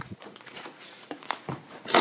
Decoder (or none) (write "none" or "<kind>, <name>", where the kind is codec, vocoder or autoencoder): vocoder, Vocos